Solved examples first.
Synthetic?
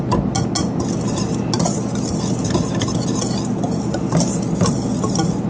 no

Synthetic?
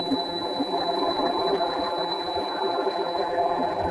yes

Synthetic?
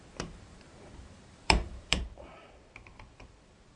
yes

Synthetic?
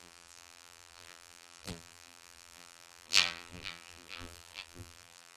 yes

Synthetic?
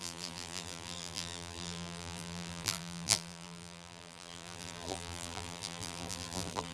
yes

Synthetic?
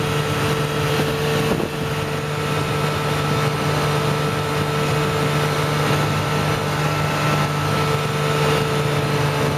no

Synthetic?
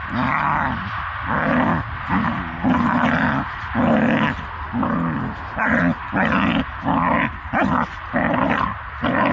no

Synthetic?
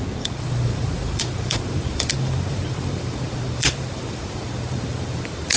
yes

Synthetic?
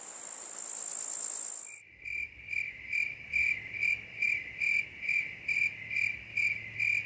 no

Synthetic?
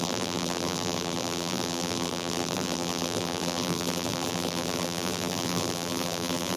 yes